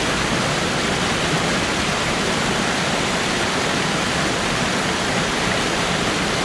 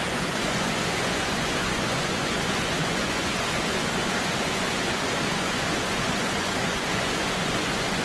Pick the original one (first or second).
first